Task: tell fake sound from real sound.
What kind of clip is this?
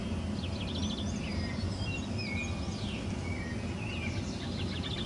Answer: real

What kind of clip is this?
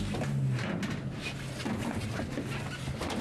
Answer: real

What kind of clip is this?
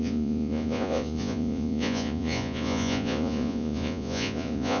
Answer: fake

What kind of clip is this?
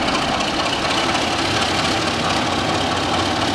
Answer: real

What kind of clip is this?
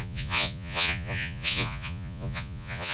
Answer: fake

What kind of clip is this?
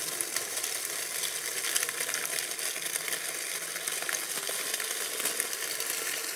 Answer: real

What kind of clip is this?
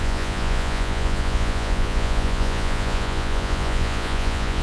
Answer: fake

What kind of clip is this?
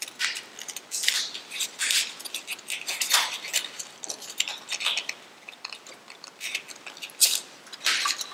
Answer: real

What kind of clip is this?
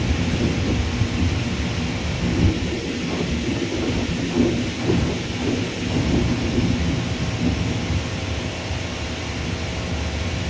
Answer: real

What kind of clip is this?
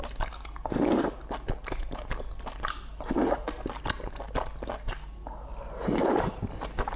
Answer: real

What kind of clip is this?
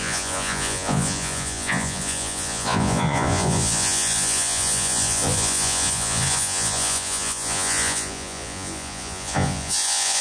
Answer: fake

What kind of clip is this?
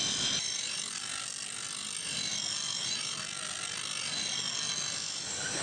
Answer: real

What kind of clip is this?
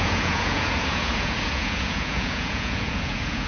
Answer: fake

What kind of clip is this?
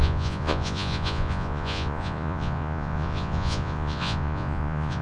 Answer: fake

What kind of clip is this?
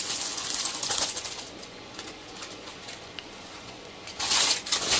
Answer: fake